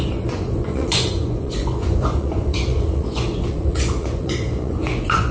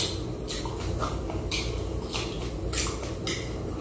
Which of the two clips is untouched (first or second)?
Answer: second